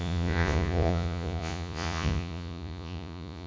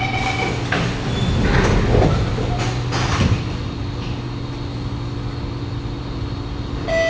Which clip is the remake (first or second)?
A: first